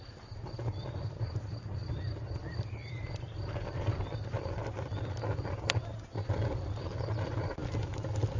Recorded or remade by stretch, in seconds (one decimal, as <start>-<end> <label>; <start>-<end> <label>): 0.0-8.4 recorded